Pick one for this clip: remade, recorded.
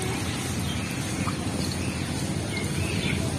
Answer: recorded